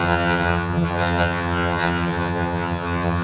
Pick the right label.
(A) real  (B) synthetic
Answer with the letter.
B